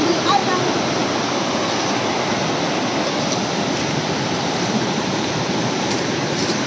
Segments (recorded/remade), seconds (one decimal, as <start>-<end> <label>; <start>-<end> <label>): 0.0-0.4 remade; 0.4-4.0 recorded; 4.0-6.7 remade